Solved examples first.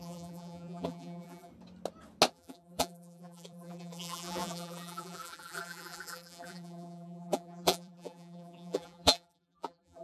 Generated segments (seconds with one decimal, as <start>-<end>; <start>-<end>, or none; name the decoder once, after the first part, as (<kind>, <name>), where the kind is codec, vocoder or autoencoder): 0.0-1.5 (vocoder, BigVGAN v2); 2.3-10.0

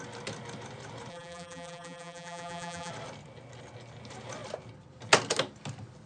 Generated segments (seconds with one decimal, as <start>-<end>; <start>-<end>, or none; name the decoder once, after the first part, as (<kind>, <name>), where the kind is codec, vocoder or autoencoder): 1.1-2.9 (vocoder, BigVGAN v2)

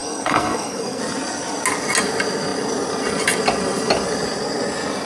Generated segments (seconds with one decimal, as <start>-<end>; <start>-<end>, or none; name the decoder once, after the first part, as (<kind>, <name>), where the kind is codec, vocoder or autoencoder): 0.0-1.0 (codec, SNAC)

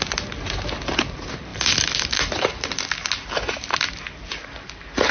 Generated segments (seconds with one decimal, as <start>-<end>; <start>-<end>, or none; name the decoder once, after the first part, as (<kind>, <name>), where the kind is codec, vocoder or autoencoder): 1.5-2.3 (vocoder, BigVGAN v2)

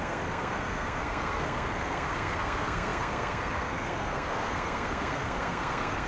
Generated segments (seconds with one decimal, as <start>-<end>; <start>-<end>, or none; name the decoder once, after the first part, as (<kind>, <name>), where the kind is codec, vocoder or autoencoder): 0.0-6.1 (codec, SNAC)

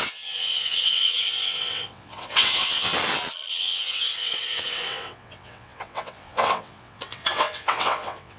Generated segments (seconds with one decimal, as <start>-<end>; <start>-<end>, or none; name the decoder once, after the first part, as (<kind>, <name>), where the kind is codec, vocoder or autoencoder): 0.0-2.9 (vocoder, WaveNeXt); 3.5-8.4

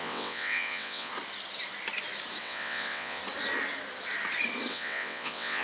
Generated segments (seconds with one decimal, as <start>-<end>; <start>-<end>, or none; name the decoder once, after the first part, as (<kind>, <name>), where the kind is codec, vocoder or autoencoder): 0.0-1.1 (vocoder, WaveNeXt); 2.4-3.2; 4.7-5.6

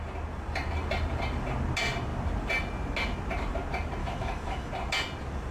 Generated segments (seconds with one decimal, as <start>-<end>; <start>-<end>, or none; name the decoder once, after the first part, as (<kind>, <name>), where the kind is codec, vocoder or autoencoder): 4.0-4.7 (autoencoder, DAC-VAE)